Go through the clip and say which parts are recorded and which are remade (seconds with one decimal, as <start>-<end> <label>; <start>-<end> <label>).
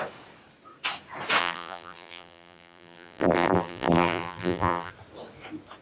0.0-1.4 recorded; 1.4-4.9 remade; 4.9-5.8 recorded